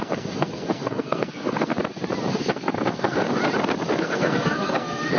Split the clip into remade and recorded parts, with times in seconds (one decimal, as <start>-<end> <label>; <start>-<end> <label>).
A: 0.0-1.7 remade; 1.7-2.3 recorded; 2.3-3.2 remade; 3.2-4.0 recorded; 4.0-5.2 remade